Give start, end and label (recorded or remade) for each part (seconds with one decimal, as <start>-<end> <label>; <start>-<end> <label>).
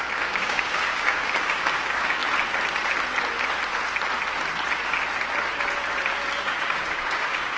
0.0-2.2 remade; 2.2-6.4 recorded; 6.4-7.6 remade